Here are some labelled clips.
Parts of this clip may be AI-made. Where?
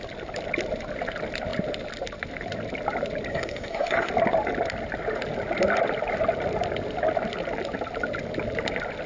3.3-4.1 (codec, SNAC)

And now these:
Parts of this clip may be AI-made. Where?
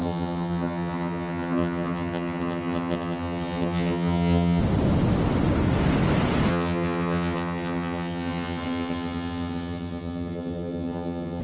0.0-4.6 (vocoder, HiFi-GAN); 6.5-11.4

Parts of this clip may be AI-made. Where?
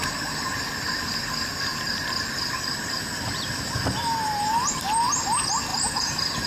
1.7-3.6 (vocoder, BigVGAN v2); 5.7-6.5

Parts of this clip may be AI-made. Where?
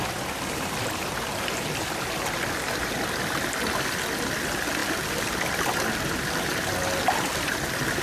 none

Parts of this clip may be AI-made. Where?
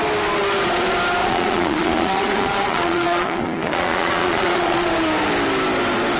1.2-4.9 (vocoder, Vocos)